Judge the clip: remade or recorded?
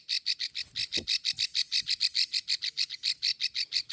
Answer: recorded